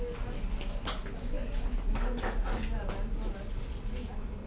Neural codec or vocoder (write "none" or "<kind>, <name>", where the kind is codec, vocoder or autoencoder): none